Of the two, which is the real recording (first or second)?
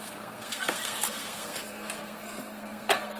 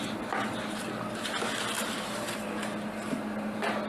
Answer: second